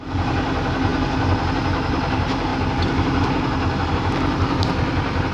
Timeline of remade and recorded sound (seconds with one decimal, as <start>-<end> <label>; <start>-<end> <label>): 0.0-5.3 recorded